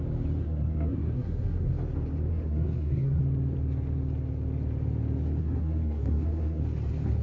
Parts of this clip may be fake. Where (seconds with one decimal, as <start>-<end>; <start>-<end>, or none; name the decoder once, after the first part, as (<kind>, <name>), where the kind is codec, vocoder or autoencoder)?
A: 0.4-1.7 (codec, SNAC); 2.3-3.2; 5.4-6.6